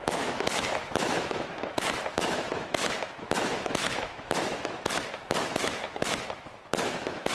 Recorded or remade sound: remade